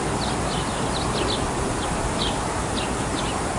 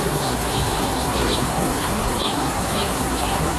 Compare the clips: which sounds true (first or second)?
first